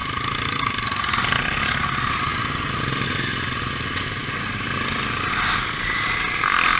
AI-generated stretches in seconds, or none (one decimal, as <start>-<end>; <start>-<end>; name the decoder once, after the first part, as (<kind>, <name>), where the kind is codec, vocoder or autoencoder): none